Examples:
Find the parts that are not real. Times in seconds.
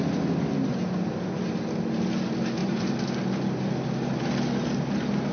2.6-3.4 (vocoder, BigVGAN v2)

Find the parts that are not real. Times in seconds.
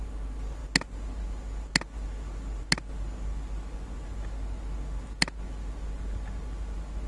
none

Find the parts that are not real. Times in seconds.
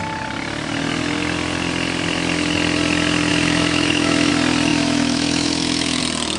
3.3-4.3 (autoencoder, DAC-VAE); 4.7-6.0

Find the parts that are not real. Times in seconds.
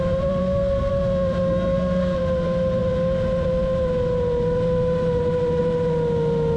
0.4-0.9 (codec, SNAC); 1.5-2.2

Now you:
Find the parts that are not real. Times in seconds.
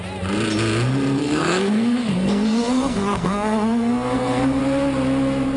1.2-4.6 (codec, SNAC)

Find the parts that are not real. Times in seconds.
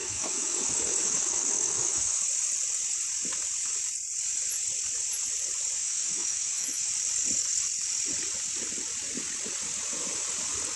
0.0-2.2 (autoencoder, DAC-VAE); 5.8-6.9